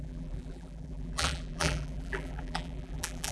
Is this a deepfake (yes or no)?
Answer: yes